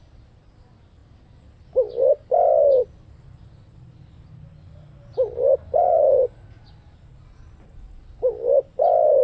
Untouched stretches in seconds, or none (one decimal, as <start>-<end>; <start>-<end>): 0.0-5.8; 6.7-9.2